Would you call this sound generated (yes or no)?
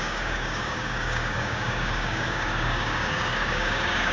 yes